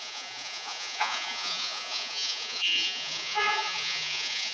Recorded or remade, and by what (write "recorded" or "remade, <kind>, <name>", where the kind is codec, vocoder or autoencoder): remade, vocoder, Vocos